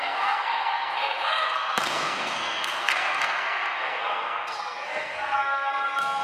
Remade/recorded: remade